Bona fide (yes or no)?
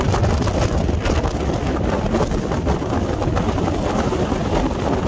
yes